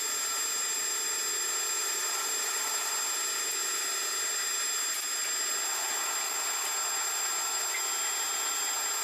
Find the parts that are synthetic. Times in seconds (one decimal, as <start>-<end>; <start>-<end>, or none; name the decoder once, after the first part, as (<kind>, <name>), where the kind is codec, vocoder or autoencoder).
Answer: 1.8-2.9 (vocoder, BigVGAN v2)